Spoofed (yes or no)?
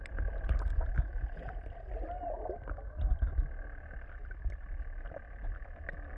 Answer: no